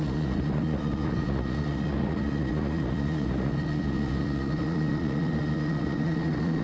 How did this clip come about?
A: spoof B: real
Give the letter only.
A